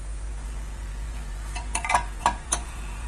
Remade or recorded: remade